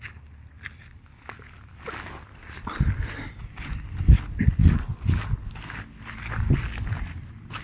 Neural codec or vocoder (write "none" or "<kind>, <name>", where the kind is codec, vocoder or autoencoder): none